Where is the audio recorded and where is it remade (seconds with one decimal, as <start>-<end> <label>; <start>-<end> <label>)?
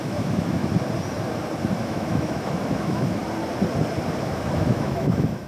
0.0-0.6 remade; 0.6-1.7 recorded; 1.7-3.2 remade; 3.2-4.2 recorded; 4.2-5.5 remade